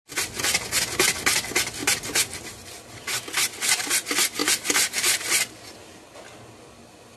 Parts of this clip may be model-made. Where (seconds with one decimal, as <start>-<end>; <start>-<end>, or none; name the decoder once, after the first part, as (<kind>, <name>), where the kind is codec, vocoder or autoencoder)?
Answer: 1.8-3.9 (vocoder, BigVGAN v2); 4.4-5.3